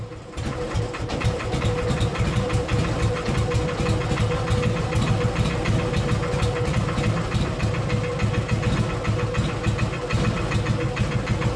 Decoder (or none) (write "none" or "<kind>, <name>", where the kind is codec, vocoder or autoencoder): none